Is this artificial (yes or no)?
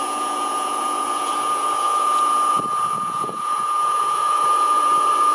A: yes